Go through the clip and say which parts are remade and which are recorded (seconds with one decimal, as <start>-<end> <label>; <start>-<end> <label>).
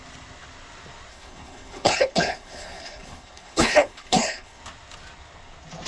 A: 0.0-1.1 recorded; 1.1-4.6 remade; 4.6-5.9 recorded